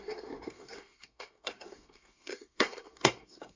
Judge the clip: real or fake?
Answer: fake